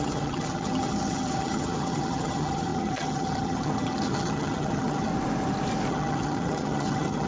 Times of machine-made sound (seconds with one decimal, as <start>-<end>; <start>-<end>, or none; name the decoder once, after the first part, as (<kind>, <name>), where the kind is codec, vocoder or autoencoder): 0.0-5.1 (vocoder, HiFi-GAN); 5.9-7.3